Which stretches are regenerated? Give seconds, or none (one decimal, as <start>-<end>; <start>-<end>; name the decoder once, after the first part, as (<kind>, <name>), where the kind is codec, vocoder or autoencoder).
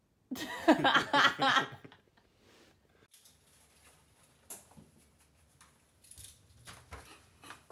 none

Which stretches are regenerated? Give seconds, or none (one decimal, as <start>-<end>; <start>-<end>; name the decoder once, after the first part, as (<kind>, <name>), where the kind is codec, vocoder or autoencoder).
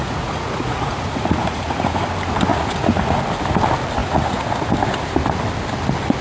0.0-2.0 (vocoder, Vocos); 2.5-3.2; 4.0-4.7